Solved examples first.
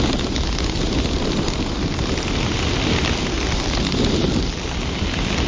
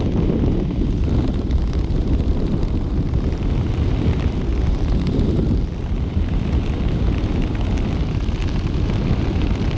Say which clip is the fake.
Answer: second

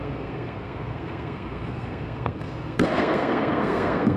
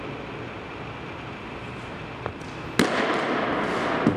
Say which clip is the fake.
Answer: first